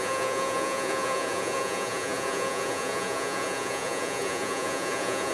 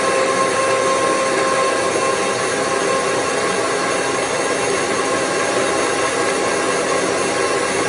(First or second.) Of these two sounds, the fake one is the first